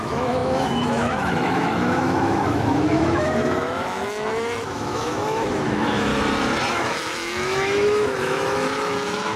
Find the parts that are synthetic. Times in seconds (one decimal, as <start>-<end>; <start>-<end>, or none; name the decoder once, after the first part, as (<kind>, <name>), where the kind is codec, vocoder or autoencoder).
0.0-6.1 (autoencoder, DAC-VAE); 6.7-9.4

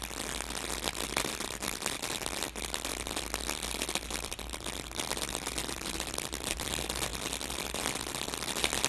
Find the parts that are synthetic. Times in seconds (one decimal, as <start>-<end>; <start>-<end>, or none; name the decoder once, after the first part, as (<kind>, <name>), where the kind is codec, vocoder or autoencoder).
none

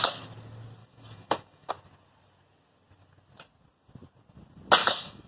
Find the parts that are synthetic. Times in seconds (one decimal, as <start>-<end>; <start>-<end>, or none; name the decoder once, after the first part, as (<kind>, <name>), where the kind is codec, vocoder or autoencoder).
0.8-1.7 (autoencoder, DAC-VAE); 4.8-5.3

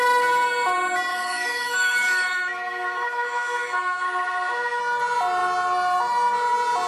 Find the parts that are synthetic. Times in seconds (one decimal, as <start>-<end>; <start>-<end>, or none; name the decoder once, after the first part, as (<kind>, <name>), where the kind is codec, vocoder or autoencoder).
1.1-4.8 (autoencoder, DAC-VAE)

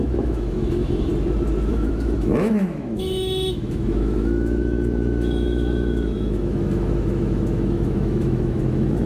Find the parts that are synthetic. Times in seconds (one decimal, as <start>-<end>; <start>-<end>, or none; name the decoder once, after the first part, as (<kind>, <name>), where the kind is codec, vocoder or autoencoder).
0.0-1.1 (autoencoder, DAC-VAE); 1.7-9.1

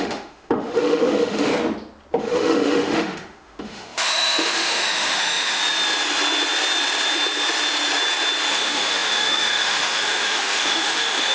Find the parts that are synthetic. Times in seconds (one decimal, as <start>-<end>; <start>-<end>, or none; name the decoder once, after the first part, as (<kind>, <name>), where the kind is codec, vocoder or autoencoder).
0.0-1.5 (autoencoder, DAC-VAE); 2.2-5.6; 8.5-11.3